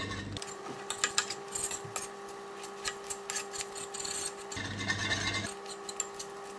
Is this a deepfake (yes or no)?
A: no